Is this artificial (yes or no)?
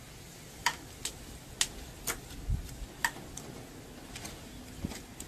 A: no